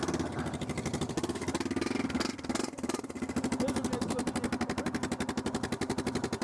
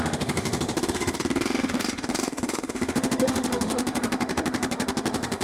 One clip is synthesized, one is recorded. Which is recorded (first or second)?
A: first